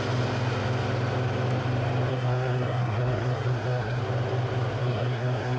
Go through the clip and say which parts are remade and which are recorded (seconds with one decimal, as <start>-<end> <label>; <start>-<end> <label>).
0.0-2.1 recorded; 2.1-4.0 remade; 4.0-4.8 recorded; 4.8-5.6 remade

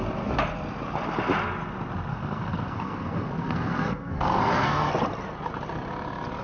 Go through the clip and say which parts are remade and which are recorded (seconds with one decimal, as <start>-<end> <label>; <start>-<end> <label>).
0.0-2.1 recorded; 2.1-4.9 remade; 4.9-6.4 recorded

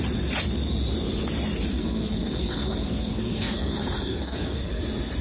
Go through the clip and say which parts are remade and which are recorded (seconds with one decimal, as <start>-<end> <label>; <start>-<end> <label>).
0.0-1.7 recorded; 1.7-4.8 remade; 4.8-5.2 recorded

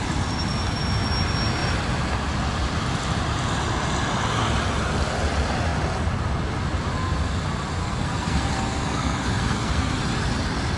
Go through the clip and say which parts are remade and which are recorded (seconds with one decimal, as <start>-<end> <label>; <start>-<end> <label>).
0.0-7.8 recorded; 7.8-10.0 remade; 10.0-10.8 recorded

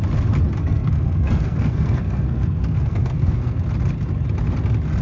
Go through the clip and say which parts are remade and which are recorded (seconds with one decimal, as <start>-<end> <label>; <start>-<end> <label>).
0.0-0.6 recorded; 0.6-3.6 remade; 3.6-5.0 recorded

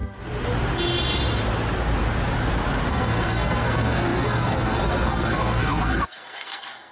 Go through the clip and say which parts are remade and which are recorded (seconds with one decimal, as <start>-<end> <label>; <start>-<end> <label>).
0.0-2.9 recorded; 2.9-6.9 remade

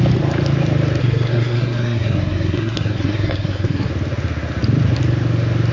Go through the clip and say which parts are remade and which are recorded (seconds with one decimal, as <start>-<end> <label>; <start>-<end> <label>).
0.0-1.0 recorded; 1.0-3.9 remade; 3.9-5.7 recorded